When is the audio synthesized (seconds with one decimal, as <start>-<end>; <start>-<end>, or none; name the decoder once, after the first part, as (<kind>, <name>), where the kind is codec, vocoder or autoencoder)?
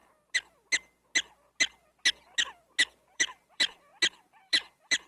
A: 3.1-3.9 (vocoder, BigVGAN v2); 4.4-5.1